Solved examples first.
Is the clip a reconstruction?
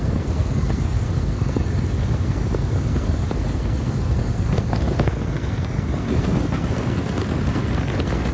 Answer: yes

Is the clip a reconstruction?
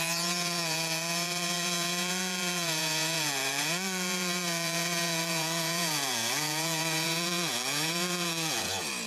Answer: yes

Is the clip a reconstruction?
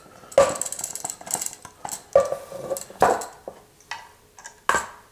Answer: no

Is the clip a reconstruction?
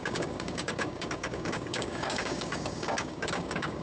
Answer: yes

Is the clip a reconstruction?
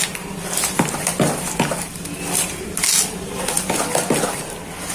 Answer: no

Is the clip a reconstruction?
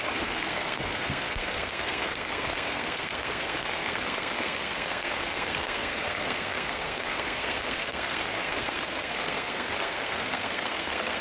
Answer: yes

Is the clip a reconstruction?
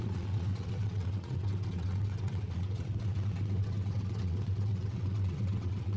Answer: yes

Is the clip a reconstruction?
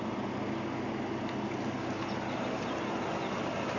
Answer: no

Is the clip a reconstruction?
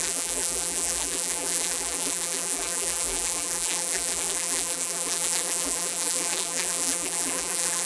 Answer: yes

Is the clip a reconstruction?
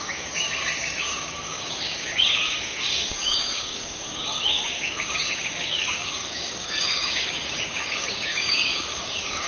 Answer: yes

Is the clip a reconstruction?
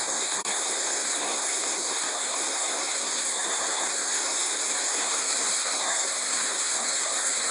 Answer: yes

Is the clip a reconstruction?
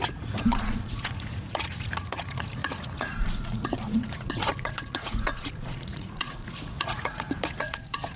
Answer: yes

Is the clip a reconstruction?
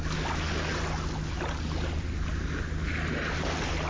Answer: no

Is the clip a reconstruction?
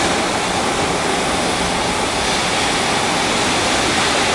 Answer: no